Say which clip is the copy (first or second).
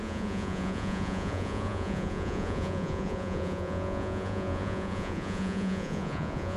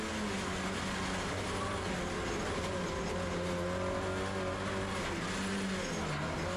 first